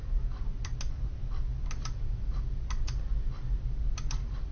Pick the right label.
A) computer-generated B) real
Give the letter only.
B